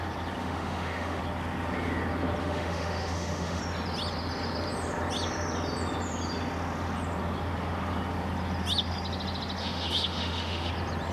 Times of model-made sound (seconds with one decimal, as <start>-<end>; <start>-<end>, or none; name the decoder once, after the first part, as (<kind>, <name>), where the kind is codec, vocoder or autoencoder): 0.4-1.2 (autoencoder, DAC-VAE); 2.4-3.6; 9.6-10.7